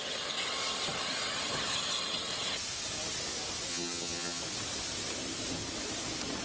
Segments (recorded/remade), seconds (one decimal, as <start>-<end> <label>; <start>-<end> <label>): 0.0-3.7 recorded; 3.7-4.4 remade; 4.4-6.4 recorded

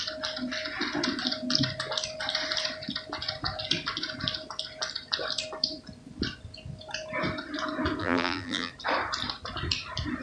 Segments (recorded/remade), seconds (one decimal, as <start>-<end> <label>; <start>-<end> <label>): 0.0-8.0 recorded; 8.0-8.7 remade; 8.7-10.2 recorded